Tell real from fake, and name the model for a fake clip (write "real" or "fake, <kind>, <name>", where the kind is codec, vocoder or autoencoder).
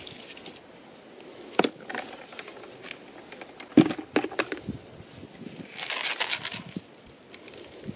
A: real